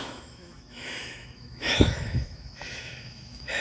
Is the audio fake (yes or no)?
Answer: yes